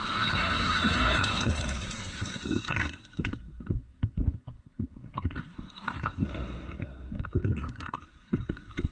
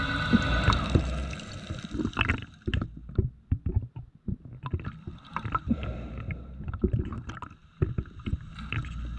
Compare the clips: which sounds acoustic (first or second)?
second